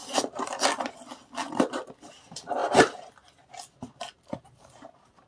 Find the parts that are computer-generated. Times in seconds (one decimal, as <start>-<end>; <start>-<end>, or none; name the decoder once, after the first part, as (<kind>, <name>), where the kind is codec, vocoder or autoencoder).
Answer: 1.5-2.6 (vocoder, BigVGAN v2); 4.0-5.3

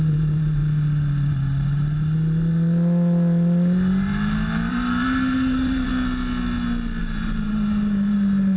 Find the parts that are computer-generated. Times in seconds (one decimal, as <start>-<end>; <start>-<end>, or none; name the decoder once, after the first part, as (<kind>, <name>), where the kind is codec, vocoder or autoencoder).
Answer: 0.0-0.6 (vocoder, BigVGAN v2); 4.7-5.9; 7.0-8.6